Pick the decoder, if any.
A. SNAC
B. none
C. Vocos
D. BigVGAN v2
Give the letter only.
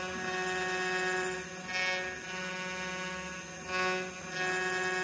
B